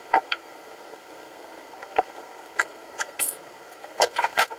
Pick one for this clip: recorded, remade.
remade